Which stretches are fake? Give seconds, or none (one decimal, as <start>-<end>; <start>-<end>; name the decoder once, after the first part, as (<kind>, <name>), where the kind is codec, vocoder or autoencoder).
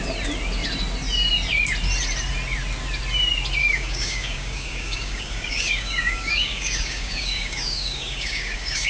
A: 3.6-8.9 (codec, DAC)